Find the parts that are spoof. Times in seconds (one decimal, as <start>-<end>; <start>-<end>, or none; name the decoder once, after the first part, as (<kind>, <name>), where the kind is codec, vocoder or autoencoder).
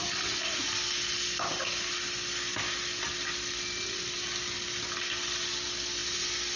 none